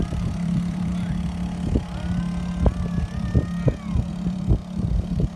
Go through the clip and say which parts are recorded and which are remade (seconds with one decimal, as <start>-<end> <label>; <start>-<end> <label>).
0.0-0.9 remade; 0.9-4.1 recorded; 4.1-5.4 remade